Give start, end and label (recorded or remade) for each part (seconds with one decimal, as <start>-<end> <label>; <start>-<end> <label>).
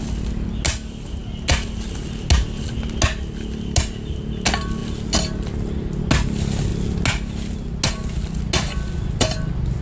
0.0-9.8 recorded